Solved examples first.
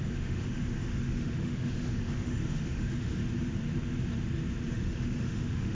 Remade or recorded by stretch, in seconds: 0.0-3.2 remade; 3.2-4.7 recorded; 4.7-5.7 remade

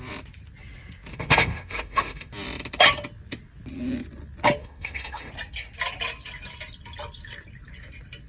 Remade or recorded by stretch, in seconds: 0.0-1.1 recorded; 1.1-2.3 remade; 2.3-4.6 recorded; 4.6-5.3 remade; 5.3-8.3 recorded

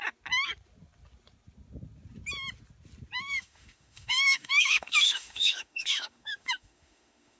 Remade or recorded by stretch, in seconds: 0.0-3.2 recorded; 3.2-7.4 remade

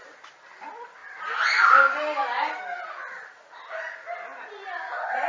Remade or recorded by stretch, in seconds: 0.0-5.3 recorded

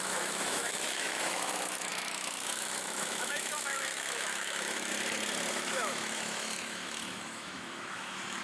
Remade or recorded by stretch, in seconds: 0.0-4.9 remade; 4.9-5.5 recorded; 5.5-8.4 remade

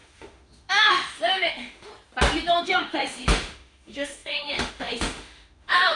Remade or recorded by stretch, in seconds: 0.0-1.9 remade; 1.9-2.6 recorded; 2.6-6.0 remade

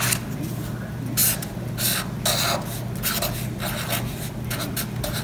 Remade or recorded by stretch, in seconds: 0.0-5.2 recorded

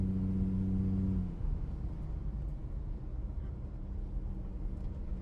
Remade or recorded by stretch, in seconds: 0.0-1.2 recorded; 1.2-1.7 remade; 1.7-5.2 recorded